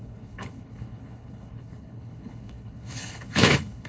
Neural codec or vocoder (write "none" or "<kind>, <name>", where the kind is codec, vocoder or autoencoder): codec, HILCodec